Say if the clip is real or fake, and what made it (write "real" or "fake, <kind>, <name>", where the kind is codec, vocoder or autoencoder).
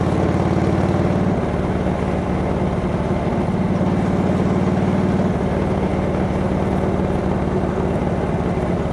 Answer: real